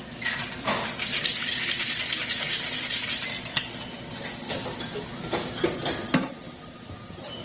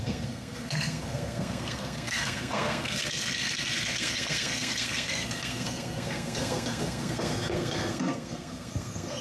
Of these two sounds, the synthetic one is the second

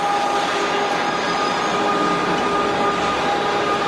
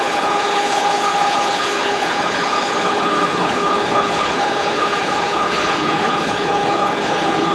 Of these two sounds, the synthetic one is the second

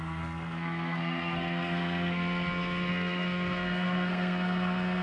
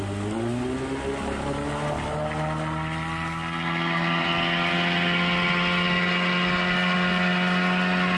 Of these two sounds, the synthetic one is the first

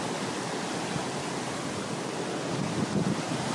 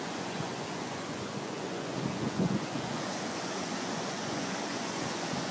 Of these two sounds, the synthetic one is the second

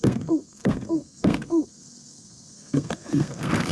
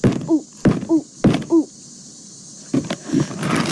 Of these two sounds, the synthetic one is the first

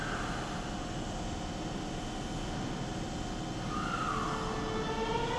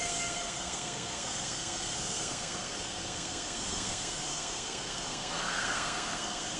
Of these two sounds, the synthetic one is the second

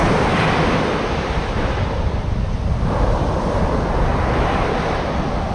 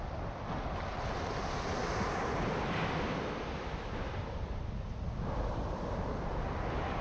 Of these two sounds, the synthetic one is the first